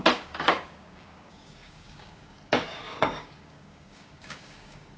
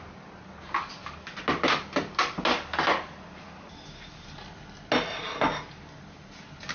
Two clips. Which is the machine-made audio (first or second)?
first